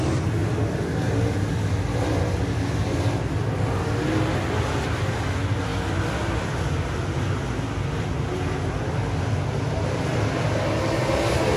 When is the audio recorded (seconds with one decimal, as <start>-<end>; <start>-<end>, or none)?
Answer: 0.0-11.6